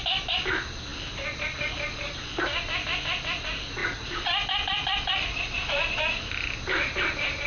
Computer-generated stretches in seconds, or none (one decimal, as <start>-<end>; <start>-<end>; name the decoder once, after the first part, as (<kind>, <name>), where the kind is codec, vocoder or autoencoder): none